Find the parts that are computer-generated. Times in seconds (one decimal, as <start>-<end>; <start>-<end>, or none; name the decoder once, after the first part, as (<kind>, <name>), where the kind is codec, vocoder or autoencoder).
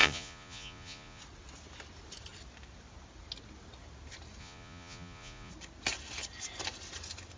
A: 0.0-1.2 (vocoder, Vocos); 4.4-5.5